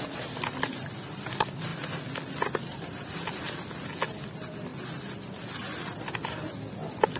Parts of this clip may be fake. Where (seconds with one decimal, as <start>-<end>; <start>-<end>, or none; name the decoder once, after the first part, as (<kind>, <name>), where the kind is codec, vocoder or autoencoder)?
none